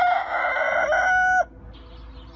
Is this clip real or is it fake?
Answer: real